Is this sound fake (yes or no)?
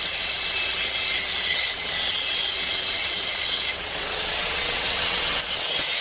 yes